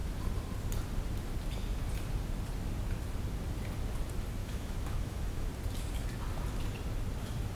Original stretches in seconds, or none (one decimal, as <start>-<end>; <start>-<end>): 0.0-4.4; 5.5-7.5